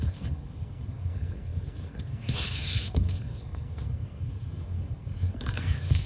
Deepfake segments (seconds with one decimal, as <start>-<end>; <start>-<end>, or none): 0.0-6.1